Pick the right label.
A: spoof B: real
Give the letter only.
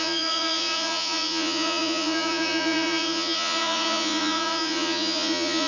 A